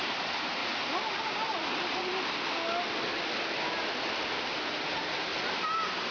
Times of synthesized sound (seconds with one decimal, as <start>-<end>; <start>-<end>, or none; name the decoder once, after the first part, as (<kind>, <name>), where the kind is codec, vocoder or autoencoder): 0.0-0.6 (vocoder, BigVGAN v2); 1.2-2.1; 4.8-5.3